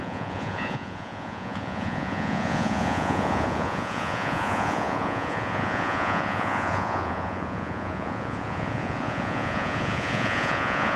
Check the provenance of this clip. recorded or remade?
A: remade